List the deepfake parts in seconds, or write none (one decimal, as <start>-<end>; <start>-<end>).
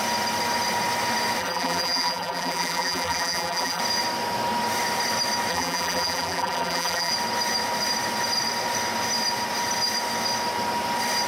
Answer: 1.4-3.8; 5.5-7.1